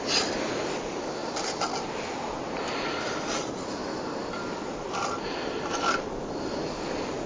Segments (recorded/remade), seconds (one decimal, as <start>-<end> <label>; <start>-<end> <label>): 0.0-7.3 recorded